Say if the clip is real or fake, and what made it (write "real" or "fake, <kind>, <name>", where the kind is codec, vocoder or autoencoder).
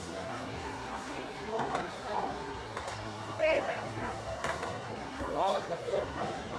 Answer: fake, codec, SNAC